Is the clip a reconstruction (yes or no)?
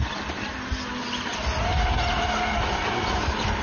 no